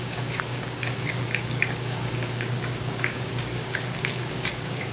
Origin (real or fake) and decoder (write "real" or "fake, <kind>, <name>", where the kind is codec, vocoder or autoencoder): fake, codec, DAC